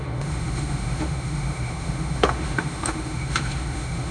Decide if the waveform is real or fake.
fake